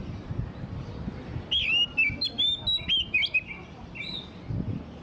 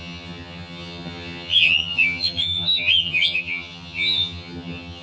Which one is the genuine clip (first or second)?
first